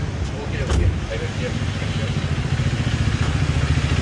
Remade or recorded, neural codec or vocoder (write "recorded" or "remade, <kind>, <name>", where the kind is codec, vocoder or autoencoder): recorded